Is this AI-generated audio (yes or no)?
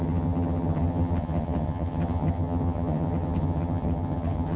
yes